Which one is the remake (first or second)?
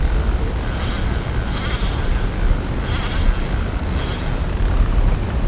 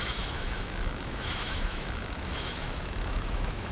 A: second